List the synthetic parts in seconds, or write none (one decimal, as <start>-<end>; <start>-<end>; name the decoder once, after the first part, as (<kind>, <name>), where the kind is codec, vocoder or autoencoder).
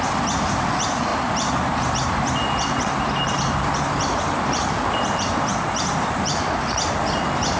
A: none